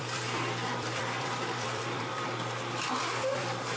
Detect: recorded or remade remade